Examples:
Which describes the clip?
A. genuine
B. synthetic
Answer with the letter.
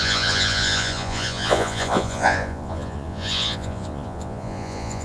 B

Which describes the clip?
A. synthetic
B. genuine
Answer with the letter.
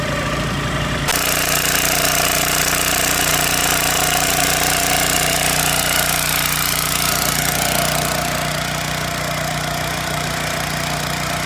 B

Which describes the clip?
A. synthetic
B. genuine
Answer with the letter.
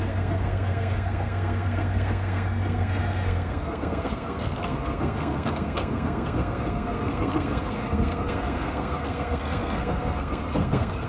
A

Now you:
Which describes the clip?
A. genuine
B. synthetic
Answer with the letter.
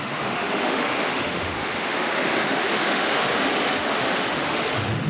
B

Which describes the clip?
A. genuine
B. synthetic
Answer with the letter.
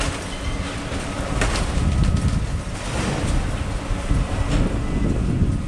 A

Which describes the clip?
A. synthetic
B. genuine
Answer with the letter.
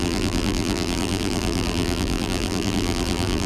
A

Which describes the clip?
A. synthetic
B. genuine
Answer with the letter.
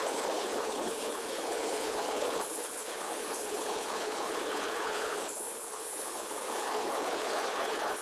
A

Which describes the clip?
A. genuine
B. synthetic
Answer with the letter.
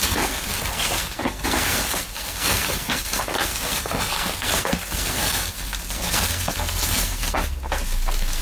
B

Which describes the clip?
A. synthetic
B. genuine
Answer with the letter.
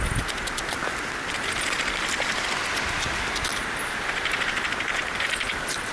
B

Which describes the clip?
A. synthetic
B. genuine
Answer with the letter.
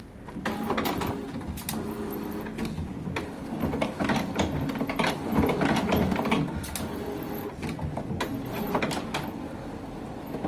B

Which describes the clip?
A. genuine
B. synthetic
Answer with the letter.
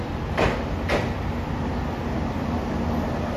A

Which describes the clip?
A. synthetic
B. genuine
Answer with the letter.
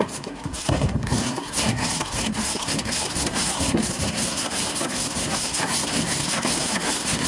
A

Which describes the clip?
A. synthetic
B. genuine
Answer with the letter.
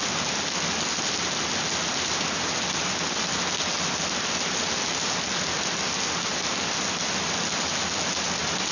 B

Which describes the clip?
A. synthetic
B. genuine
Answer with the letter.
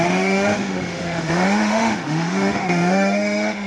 A